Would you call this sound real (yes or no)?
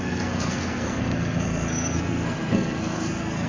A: no